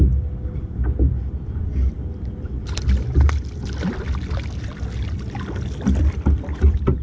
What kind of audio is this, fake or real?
real